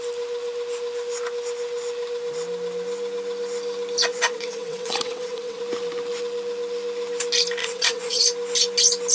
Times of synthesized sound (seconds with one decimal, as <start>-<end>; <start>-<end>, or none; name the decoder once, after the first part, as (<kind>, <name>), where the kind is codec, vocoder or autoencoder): 4.1-5.6 (vocoder, WaveNeXt); 7.6-8.2

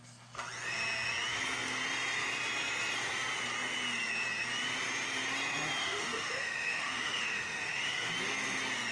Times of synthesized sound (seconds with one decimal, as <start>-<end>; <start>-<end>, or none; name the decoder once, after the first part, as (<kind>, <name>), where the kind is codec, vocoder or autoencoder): 5.8-8.1 (autoencoder, DAC-VAE)

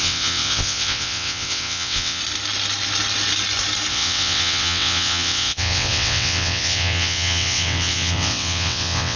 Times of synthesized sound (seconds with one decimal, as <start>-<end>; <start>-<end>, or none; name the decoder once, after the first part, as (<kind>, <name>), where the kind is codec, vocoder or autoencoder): 0.0-2.2 (vocoder, WaveNeXt); 3.9-9.2